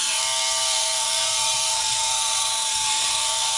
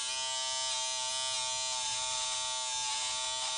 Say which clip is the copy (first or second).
first